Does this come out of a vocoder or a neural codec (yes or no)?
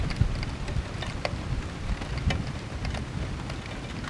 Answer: no